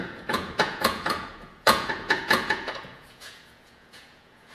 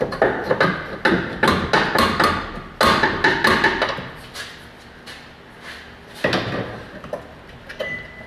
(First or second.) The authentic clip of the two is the second